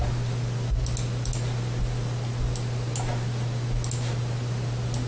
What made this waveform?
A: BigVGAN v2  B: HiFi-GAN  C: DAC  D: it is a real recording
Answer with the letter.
D